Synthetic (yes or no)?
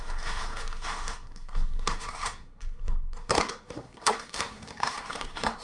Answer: yes